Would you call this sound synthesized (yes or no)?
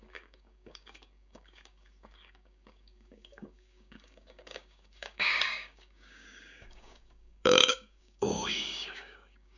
yes